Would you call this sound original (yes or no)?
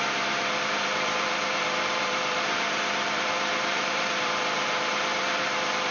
no